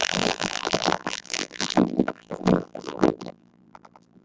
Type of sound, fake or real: fake